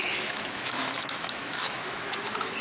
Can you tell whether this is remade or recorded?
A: remade